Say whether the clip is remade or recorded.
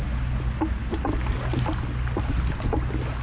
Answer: recorded